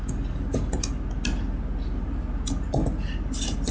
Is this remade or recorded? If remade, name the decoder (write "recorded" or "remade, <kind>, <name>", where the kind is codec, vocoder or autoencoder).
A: recorded